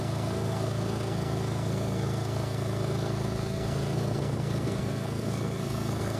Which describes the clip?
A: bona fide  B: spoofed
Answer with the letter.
B